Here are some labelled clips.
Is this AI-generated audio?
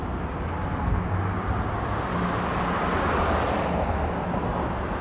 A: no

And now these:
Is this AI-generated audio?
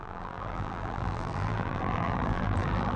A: yes